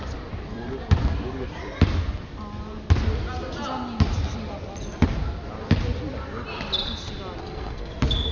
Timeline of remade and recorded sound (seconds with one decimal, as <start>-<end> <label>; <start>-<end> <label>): 0.0-7.4 recorded; 7.4-7.9 remade; 7.9-8.3 recorded